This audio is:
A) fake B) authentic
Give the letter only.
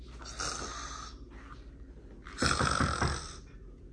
B